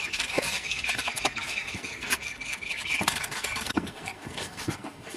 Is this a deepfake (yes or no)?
yes